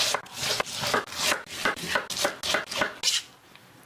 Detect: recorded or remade recorded